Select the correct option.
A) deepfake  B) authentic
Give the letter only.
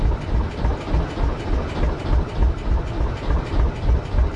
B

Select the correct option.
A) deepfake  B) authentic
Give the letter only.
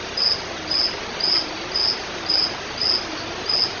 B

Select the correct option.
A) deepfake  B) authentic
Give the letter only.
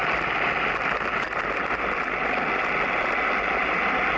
B